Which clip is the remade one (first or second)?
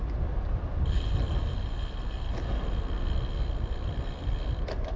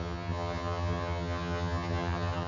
second